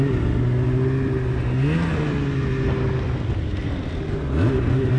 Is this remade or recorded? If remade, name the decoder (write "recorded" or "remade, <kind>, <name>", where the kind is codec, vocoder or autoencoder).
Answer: recorded